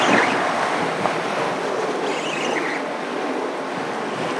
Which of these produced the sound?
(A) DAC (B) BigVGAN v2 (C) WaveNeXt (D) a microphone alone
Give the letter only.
D